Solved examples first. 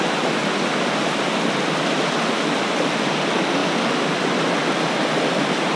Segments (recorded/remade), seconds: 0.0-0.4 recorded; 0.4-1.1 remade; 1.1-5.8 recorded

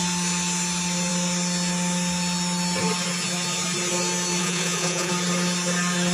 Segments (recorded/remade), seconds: 0.0-4.4 recorded; 4.4-5.1 remade; 5.1-6.1 recorded

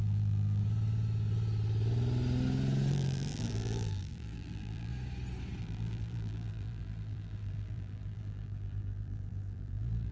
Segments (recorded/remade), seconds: 0.0-0.6 remade; 0.6-2.9 recorded; 2.9-4.9 remade; 4.9-5.6 recorded; 5.6-10.1 remade

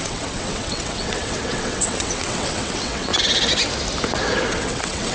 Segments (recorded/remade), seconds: 0.0-3.1 remade; 3.1-4.5 recorded; 4.5-5.1 remade